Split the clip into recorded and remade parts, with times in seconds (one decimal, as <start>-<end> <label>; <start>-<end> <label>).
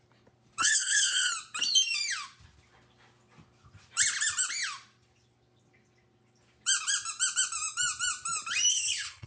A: 0.0-0.6 recorded; 0.6-1.3 remade; 1.3-8.7 recorded; 8.7-9.3 remade